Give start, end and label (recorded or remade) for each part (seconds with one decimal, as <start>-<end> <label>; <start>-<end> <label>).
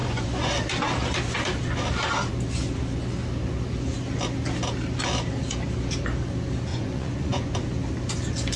0.0-0.5 remade; 0.5-6.7 recorded; 6.7-7.5 remade; 7.5-8.6 recorded